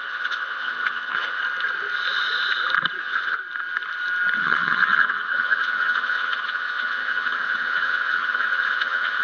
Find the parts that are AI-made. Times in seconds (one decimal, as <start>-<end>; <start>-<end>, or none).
0.0-1.4; 3.0-3.4; 4.4-9.2

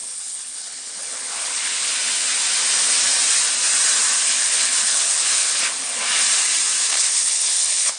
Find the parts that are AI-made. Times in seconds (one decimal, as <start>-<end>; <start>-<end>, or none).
0.0-1.9; 4.2-6.0; 6.9-8.0

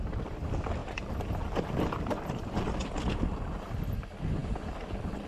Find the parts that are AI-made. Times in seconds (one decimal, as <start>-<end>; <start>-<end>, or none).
0.8-2.8

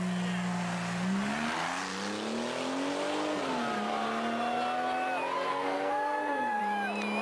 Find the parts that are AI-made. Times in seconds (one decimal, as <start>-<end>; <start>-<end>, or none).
5.5-6.6

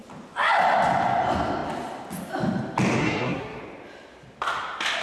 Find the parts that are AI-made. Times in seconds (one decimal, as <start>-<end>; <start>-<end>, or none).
3.0-3.6